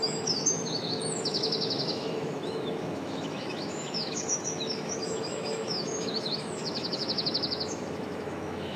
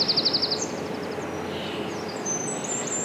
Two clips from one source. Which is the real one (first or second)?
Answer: second